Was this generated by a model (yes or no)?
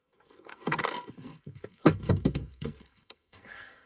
yes